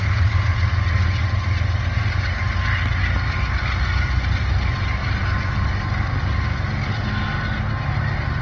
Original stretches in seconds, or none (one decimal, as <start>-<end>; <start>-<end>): 0.0-8.4